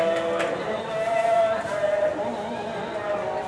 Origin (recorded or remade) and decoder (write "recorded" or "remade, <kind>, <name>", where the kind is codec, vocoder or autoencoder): recorded